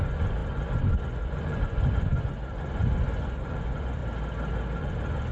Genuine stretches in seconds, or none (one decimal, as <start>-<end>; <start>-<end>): 4.0-4.8